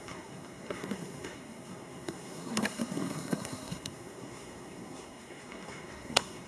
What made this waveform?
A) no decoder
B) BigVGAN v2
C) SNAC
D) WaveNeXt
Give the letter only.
C